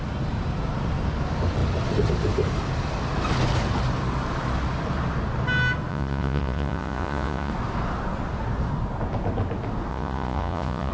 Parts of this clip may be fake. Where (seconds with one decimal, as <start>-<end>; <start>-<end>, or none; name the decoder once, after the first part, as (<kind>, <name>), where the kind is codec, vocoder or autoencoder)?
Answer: 5.9-7.5 (vocoder, Vocos); 9.9-10.9